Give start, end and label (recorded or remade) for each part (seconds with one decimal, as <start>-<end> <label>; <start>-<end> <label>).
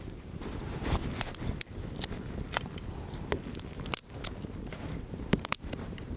0.0-1.0 remade; 1.0-4.7 recorded; 4.7-6.2 remade